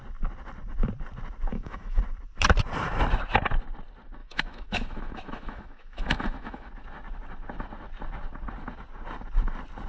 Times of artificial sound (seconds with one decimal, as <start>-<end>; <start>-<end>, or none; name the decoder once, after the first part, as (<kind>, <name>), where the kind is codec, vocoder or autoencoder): 1.5-2.0 (autoencoder, DAC-VAE); 4.2-6.7